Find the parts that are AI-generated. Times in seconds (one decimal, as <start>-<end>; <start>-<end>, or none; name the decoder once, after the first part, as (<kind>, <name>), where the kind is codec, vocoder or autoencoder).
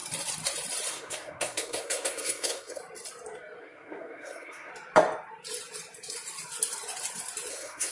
0.9-2.8 (codec, SNAC); 3.6-4.7; 7.5-7.9